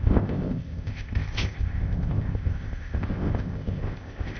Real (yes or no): no